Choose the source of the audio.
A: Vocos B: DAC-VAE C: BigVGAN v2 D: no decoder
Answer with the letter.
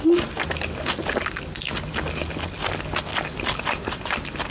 D